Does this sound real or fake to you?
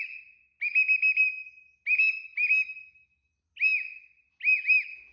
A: real